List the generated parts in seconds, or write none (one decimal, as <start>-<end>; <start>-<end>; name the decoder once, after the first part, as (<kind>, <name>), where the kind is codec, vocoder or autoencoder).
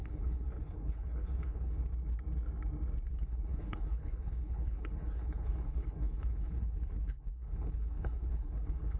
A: 0.0-1.8 (codec, HILCodec); 3.1-9.0